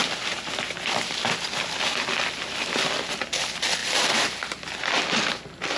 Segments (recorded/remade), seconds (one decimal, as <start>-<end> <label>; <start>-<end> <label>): 0.0-5.8 recorded